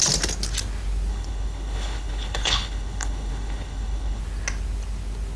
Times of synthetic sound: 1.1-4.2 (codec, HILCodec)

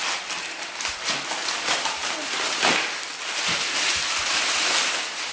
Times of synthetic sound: none